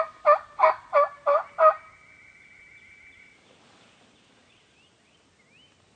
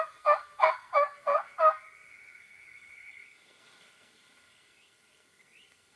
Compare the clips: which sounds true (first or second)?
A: first